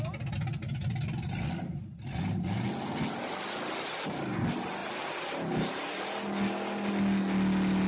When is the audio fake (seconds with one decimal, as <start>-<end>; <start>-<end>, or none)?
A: none